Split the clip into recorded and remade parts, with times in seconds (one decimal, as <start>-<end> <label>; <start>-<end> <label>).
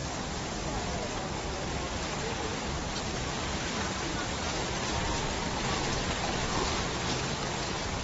0.0-0.6 remade; 0.6-1.0 recorded; 1.0-4.4 remade; 4.4-8.0 recorded